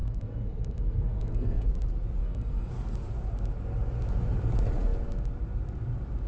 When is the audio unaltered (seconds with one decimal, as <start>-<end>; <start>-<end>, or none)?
1.7-2.2; 2.7-6.3